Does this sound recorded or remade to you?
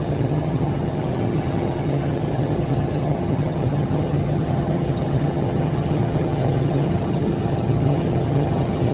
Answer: remade